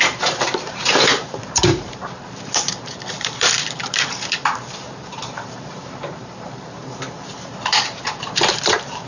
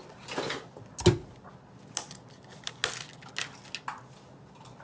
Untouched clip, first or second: second